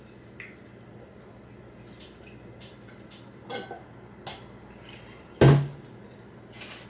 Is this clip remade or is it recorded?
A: recorded